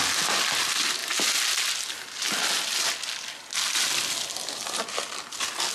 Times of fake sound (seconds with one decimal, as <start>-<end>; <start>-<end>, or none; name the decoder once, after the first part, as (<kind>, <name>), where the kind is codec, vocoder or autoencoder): none